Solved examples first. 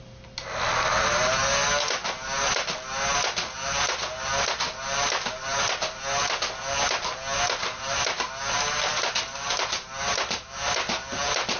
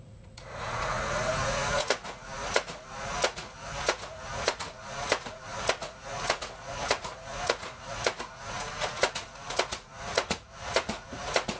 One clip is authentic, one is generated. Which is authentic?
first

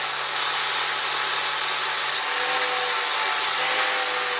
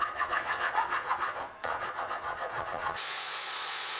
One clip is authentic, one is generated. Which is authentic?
first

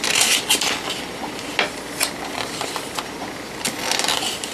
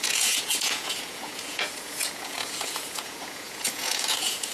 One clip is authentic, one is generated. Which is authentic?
first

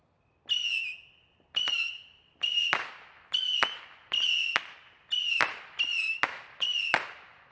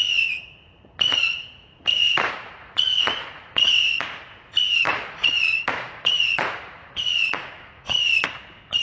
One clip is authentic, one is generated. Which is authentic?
first